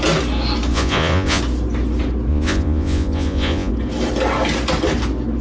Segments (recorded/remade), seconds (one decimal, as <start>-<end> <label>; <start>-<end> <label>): 0.0-0.7 recorded; 0.7-1.4 remade; 1.4-2.3 recorded; 2.3-3.7 remade; 3.7-5.4 recorded